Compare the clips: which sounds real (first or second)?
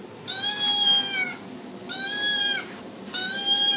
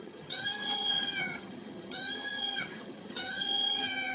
first